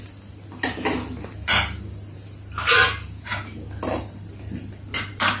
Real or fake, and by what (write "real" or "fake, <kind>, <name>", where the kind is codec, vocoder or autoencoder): real